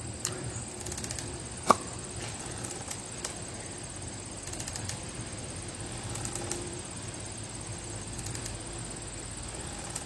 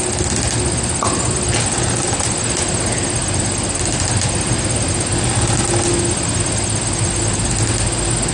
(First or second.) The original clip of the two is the second